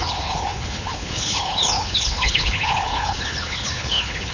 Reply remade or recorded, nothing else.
remade